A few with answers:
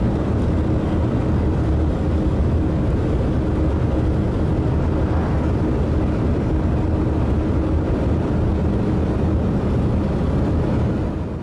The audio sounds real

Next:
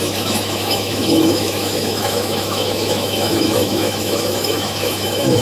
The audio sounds fake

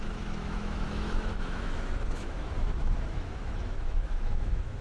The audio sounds fake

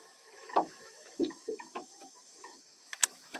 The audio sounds fake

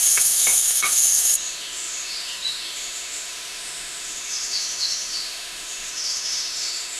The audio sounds fake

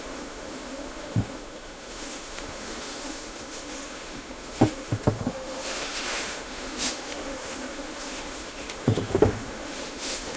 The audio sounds fake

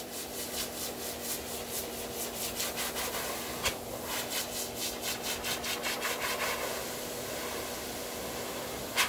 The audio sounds real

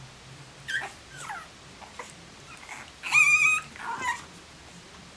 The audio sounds real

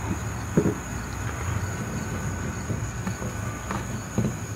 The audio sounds real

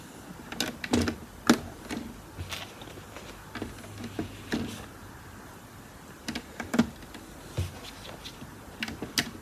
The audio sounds real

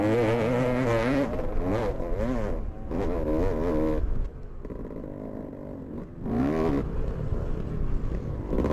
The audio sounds real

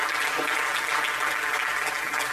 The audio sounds real